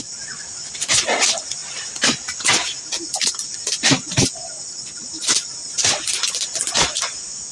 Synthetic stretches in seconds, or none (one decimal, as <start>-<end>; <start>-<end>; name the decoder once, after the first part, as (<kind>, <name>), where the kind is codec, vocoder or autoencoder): none